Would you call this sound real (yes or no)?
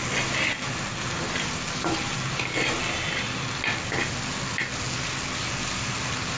yes